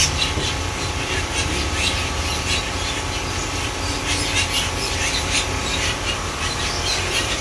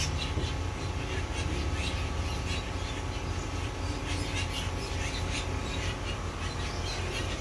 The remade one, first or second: first